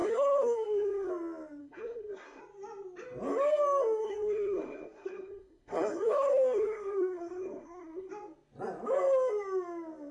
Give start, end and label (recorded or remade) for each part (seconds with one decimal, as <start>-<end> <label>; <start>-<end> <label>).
0.0-1.1 remade; 1.1-1.6 recorded; 1.6-2.4 remade; 2.4-4.0 recorded; 4.0-8.1 remade; 8.1-10.1 recorded

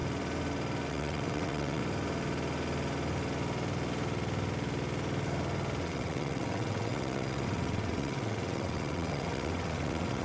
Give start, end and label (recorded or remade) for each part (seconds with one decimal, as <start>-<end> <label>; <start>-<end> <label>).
0.0-0.9 recorded; 0.9-1.8 remade; 1.8-5.8 recorded; 5.8-10.2 remade

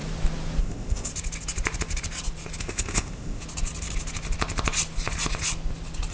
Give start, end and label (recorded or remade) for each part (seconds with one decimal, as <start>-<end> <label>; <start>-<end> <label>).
0.0-0.6 recorded; 0.6-1.1 remade; 1.1-2.6 recorded; 2.6-3.4 remade; 3.4-6.1 recorded

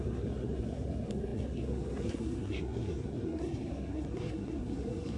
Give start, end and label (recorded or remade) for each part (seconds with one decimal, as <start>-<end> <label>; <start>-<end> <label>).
0.0-5.2 remade

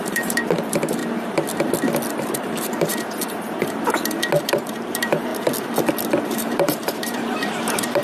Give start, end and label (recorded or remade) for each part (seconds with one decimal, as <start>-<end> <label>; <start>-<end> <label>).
0.0-1.0 remade; 1.0-2.1 recorded; 2.1-2.9 remade; 2.9-4.4 recorded; 4.4-5.3 remade; 5.3-6.3 recorded; 6.3-8.0 remade